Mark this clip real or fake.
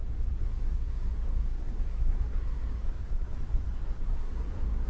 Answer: fake